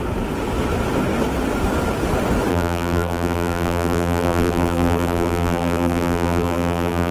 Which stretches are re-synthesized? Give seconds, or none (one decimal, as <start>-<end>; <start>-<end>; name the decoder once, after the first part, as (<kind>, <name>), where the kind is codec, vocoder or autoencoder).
2.5-7.1 (vocoder, BigVGAN v2)